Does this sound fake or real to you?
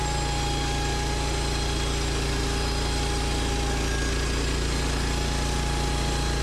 real